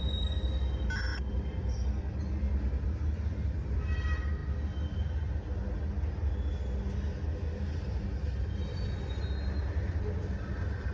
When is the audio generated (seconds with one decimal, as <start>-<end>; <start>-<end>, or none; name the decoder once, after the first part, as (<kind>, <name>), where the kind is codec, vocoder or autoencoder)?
none